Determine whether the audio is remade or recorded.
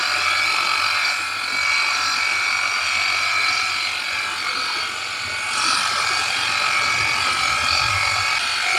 recorded